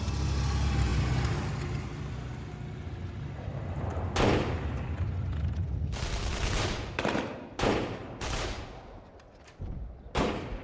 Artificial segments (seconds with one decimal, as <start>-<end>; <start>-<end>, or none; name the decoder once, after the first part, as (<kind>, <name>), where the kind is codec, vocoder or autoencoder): 6.3-9.1 (vocoder, BigVGAN v2)